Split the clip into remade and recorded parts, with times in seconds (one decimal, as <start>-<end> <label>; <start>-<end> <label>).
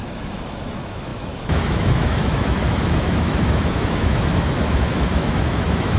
0.0-6.0 remade